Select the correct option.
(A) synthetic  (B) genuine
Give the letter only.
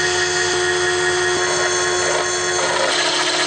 B